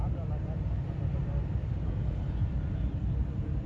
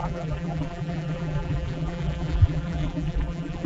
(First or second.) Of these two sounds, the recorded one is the first